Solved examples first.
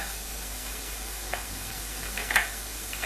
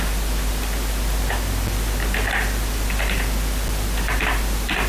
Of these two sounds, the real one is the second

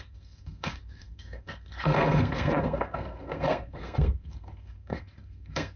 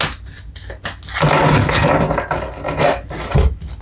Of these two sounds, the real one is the second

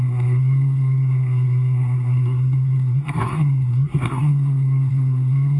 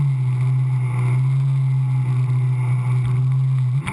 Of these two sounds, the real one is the second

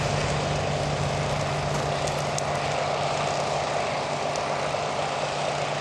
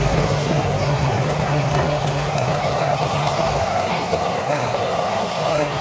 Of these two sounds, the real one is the first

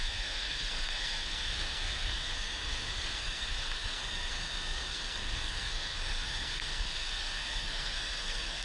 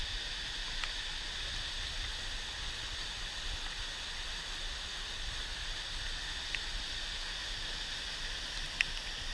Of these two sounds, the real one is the second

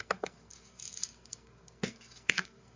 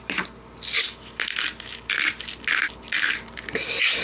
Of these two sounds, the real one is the second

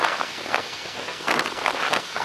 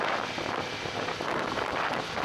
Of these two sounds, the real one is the second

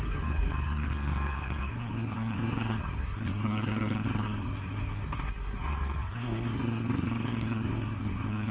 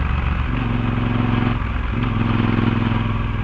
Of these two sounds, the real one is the second